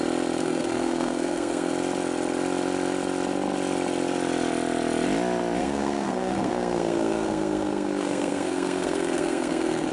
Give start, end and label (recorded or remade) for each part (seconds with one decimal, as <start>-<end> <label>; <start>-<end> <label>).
0.0-0.4 recorded; 0.4-1.7 remade; 1.7-5.6 recorded; 5.6-9.9 remade